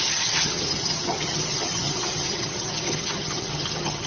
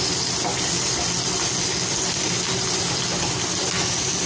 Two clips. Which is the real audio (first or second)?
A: second